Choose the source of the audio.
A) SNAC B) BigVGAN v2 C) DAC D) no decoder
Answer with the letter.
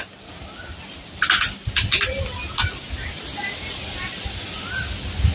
D